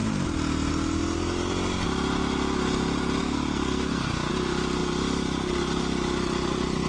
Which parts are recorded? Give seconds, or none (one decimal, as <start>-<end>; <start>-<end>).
0.0-3.2; 4.3-6.9